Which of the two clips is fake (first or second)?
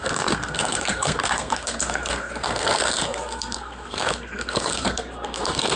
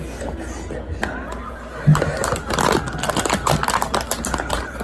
first